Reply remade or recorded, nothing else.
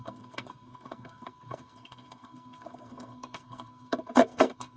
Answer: remade